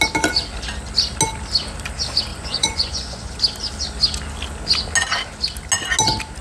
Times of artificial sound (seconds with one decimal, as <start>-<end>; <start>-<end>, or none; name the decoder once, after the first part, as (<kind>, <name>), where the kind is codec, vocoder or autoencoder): 2.3-3.3 (vocoder, Vocos)